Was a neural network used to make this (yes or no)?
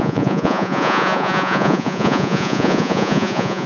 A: yes